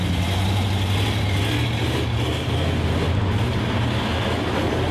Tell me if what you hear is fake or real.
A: real